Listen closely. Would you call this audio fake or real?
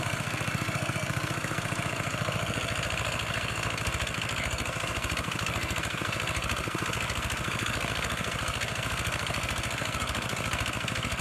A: fake